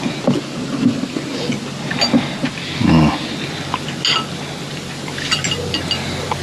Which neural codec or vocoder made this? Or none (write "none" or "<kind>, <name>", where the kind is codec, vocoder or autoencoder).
none